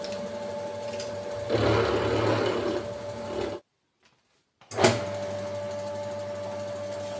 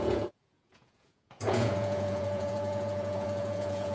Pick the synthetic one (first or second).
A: second